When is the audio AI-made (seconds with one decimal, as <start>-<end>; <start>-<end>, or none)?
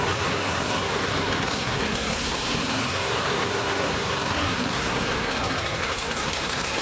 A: 0.0-6.8